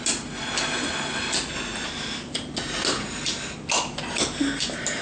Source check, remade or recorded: recorded